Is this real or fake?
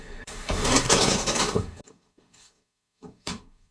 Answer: fake